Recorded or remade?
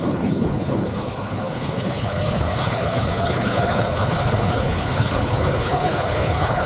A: remade